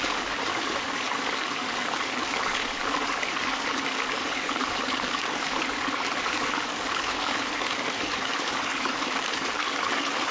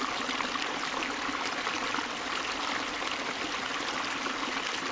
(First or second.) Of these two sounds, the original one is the second